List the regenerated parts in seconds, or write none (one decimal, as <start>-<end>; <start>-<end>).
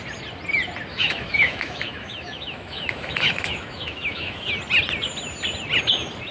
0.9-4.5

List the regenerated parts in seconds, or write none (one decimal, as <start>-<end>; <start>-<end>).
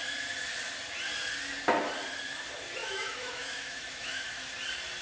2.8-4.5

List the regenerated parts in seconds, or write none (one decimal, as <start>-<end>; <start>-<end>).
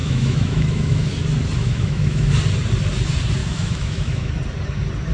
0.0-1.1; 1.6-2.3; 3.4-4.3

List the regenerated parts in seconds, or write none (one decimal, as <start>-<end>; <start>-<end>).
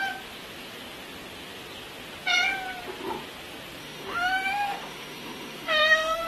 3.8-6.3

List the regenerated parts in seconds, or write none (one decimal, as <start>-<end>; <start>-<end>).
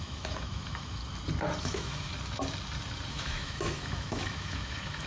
0.0-1.0; 1.6-2.1; 3.1-5.1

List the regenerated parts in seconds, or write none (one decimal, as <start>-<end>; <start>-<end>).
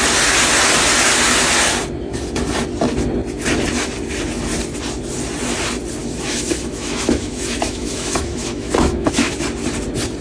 6.0-9.3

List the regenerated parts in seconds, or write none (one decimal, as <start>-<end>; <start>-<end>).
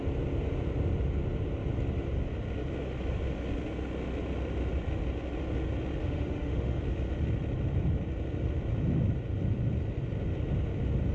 6.0-6.8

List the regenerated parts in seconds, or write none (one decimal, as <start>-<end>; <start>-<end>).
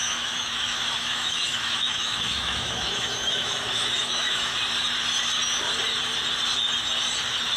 0.0-4.6